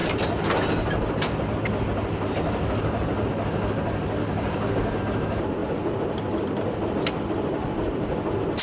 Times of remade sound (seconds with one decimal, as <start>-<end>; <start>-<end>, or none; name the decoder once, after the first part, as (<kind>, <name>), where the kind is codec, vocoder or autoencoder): 4.2-5.0 (codec, DAC)